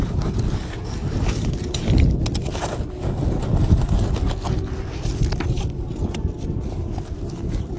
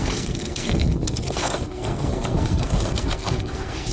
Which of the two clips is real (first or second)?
first